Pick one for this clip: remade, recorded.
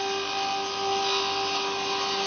recorded